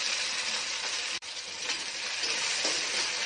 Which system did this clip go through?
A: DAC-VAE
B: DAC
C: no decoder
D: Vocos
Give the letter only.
C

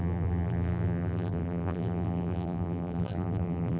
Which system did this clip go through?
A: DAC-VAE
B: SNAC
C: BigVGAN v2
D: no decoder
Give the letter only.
C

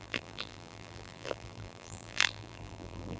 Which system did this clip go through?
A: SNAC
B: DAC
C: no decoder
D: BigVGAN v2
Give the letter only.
D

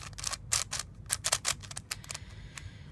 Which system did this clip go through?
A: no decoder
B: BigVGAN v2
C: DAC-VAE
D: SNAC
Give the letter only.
A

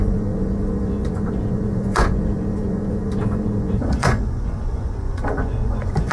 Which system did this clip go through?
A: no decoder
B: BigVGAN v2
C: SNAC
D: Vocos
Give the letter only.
D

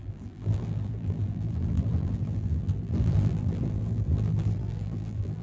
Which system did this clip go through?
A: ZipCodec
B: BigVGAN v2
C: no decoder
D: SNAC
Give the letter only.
B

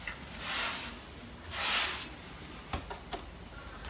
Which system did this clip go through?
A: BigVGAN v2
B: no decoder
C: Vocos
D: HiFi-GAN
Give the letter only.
B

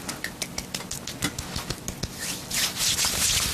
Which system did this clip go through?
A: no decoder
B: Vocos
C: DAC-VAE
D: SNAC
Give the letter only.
A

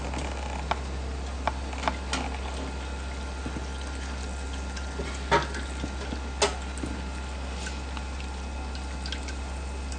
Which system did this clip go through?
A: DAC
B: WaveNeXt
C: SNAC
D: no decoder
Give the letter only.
D